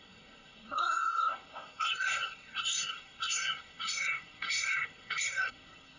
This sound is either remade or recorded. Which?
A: remade